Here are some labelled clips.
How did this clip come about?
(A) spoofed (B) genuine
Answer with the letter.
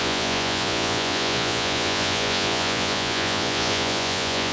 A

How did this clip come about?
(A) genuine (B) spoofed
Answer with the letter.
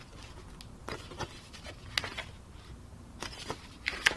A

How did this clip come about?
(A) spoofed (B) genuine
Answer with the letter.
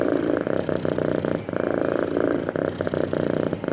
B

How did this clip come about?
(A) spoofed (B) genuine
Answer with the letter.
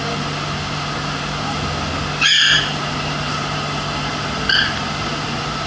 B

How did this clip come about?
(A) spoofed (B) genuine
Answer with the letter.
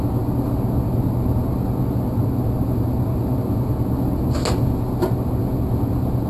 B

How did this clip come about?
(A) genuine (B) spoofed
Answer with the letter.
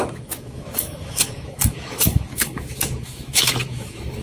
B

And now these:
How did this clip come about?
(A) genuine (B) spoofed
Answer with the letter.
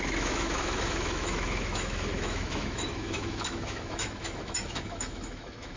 B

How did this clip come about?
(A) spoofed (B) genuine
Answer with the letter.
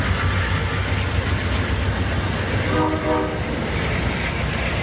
B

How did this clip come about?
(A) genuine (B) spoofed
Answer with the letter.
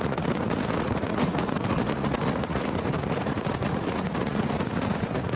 B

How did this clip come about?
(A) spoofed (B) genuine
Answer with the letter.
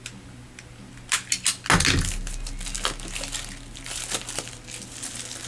B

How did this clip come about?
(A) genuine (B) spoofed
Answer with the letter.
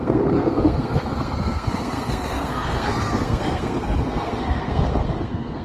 B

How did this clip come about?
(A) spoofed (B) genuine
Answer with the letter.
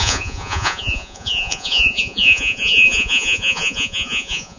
A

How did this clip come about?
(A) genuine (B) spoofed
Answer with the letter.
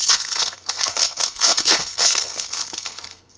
B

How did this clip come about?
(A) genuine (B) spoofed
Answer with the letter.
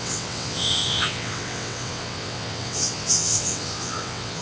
B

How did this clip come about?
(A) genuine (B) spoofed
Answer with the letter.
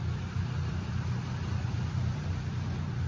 A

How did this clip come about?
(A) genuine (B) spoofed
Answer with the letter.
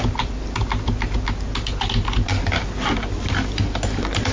A